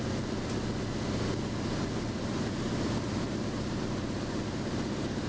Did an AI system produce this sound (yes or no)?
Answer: no